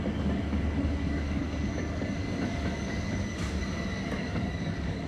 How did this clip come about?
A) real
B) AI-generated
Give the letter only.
B